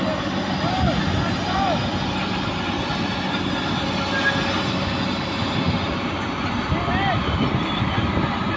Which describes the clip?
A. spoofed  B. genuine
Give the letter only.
B